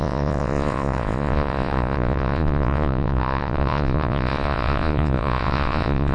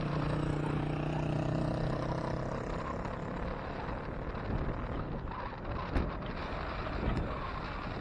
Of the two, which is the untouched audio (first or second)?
second